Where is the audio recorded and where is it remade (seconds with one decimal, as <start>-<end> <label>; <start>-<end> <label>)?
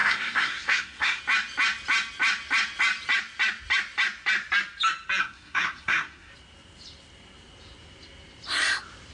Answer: 0.0-1.2 remade; 1.2-5.2 recorded; 5.2-6.3 remade; 6.3-9.1 recorded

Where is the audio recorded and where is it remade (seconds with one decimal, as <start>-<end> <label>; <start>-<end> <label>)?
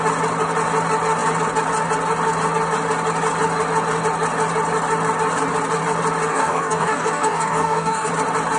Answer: 0.0-6.3 recorded; 6.3-8.1 remade; 8.1-8.6 recorded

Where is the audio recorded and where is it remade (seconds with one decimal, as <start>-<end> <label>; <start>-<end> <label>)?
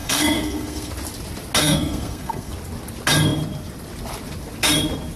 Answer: 0.0-0.9 remade; 0.9-1.6 recorded; 1.6-2.5 remade; 2.5-5.2 recorded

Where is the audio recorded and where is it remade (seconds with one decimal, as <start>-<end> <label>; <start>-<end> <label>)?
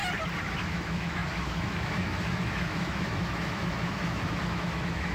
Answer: 0.0-0.6 recorded; 0.6-5.1 remade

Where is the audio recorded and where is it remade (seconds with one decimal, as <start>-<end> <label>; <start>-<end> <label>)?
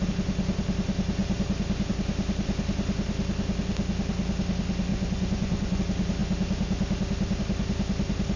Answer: 0.0-4.9 recorded; 4.9-5.8 remade; 5.8-8.4 recorded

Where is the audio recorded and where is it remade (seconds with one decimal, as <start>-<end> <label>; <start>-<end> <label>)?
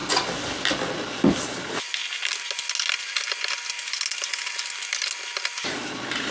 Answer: 0.0-6.3 recorded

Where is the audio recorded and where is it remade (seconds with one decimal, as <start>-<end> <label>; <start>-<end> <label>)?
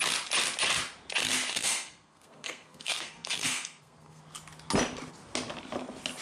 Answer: 0.0-1.5 recorded; 1.5-4.2 remade; 4.2-6.2 recorded